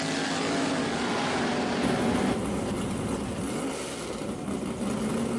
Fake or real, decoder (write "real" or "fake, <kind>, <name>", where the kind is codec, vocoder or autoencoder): real